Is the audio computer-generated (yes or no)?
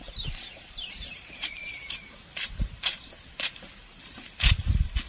yes